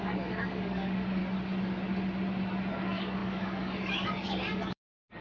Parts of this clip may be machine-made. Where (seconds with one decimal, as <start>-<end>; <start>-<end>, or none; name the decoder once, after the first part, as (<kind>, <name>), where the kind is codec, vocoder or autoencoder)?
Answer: 0.0-1.2 (codec, DAC); 2.7-5.2